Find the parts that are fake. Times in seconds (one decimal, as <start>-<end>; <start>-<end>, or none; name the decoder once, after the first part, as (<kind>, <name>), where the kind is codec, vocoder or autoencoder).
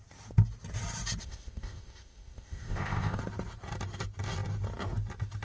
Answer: 1.2-3.2 (codec, ZipCodec)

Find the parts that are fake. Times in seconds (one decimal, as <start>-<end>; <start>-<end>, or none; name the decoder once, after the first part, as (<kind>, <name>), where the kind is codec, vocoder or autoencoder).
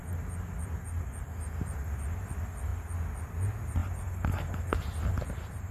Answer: none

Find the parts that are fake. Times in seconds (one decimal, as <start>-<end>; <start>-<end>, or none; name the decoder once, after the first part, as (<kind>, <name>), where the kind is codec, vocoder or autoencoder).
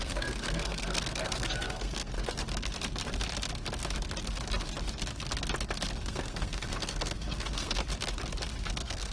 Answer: 0.0-2.1 (codec, SNAC); 6.0-7.8; 8.7-9.1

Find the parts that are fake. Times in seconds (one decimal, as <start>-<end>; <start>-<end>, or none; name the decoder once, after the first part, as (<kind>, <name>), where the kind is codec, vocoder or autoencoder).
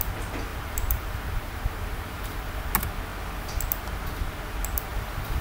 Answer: 0.5-2.7 (vocoder, BigVGAN v2); 4.9-5.4